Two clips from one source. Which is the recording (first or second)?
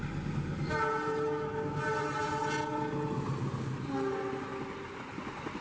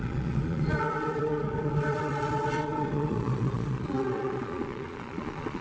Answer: first